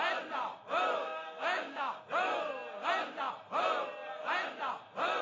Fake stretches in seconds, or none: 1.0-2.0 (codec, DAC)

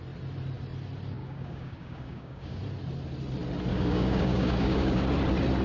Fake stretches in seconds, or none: 1.2-2.6 (codec, DAC); 3.7-5.0

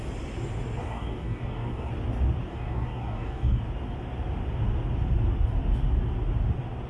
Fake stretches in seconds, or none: 0.8-1.9 (codec, DAC); 2.5-3.6

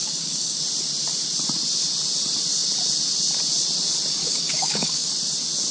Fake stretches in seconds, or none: 0.0-0.6 (codec, DAC); 4.2-5.1

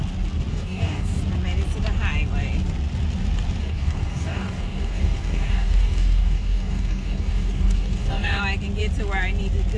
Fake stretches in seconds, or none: 0.5-1.2 (codec, DAC); 3.6-8.4

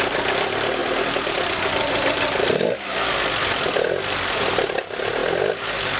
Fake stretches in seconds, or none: none